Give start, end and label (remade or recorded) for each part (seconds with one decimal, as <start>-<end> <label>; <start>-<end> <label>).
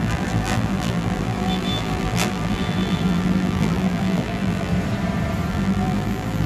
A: 0.0-4.7 remade; 4.7-5.5 recorded; 5.5-6.5 remade